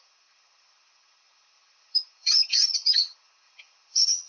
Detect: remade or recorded remade